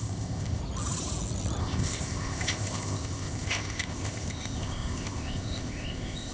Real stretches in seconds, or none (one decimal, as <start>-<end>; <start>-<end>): 0.6-1.6